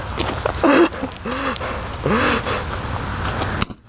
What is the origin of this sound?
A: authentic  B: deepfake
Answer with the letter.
A